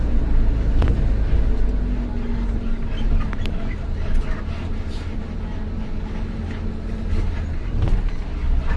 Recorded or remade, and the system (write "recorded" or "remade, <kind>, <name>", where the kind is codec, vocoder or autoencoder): recorded